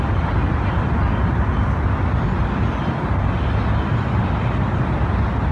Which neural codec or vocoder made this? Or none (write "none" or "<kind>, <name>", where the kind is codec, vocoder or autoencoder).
none